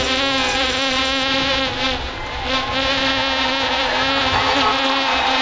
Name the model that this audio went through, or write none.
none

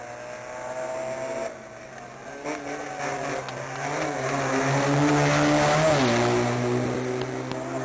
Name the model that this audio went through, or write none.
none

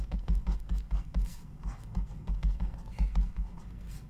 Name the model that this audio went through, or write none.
codec, SNAC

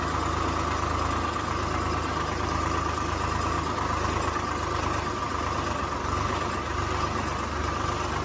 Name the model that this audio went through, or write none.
none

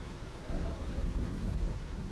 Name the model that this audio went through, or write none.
codec, SNAC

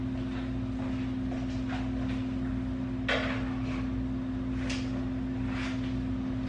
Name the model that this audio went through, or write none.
none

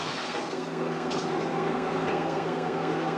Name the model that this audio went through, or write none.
codec, SNAC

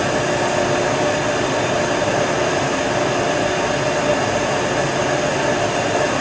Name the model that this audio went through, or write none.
none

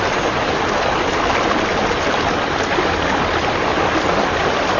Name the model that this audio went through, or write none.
none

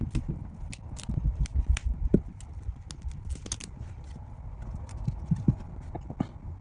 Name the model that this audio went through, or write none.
none